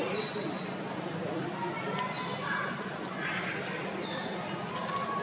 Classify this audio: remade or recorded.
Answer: recorded